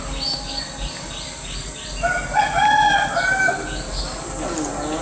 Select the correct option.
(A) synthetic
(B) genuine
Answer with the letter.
B